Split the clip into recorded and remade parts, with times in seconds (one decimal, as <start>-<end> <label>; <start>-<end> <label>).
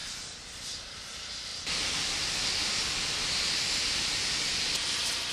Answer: 0.0-0.7 recorded; 0.7-5.3 remade